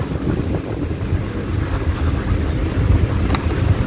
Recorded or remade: recorded